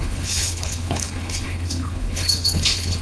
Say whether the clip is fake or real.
fake